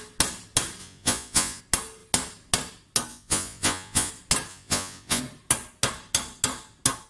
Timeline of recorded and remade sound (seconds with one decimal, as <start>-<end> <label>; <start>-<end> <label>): 0.0-0.8 recorded; 0.8-1.6 remade; 1.6-3.1 recorded; 3.1-4.1 remade; 4.1-4.5 recorded; 4.5-5.2 remade; 5.2-7.1 recorded